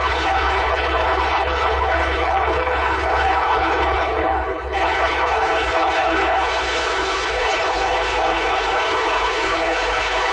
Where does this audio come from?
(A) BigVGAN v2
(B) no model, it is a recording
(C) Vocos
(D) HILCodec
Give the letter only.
D